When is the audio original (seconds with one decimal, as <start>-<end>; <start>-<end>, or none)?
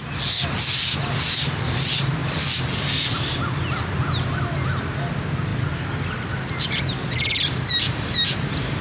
0.0-8.8